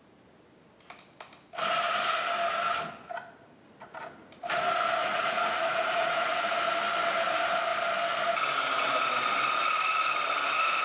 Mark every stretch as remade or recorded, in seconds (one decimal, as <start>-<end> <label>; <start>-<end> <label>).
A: 0.0-5.0 recorded; 5.0-6.3 remade; 6.3-10.8 recorded